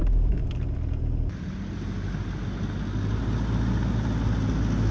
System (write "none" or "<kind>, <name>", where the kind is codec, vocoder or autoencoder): none